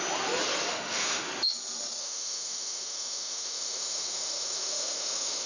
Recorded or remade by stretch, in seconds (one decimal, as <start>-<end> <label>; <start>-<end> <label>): 0.0-0.7 recorded; 0.7-1.3 remade; 1.3-2.0 recorded; 2.0-5.5 remade